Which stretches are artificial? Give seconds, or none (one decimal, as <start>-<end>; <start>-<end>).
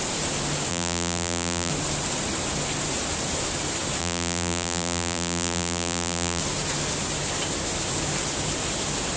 0.7-1.7; 4.0-6.4